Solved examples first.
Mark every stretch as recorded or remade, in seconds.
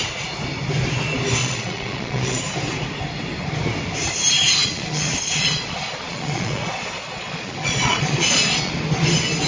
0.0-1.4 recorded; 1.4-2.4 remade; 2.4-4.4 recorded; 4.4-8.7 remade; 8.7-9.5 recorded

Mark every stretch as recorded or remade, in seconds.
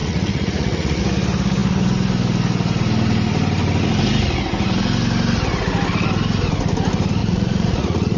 0.0-1.0 remade; 1.0-7.2 recorded; 7.2-8.2 remade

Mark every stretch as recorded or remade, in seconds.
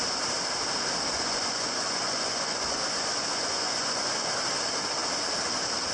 0.0-1.1 recorded; 1.1-4.3 remade; 4.3-5.9 recorded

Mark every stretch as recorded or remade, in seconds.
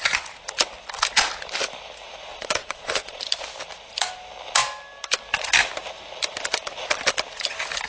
0.0-2.3 recorded; 2.3-3.2 remade; 3.2-7.9 recorded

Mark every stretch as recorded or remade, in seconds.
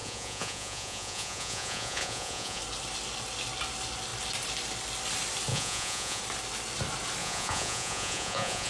0.0-2.6 remade; 2.6-5.5 recorded; 5.5-6.2 remade; 6.2-7.2 recorded; 7.2-8.7 remade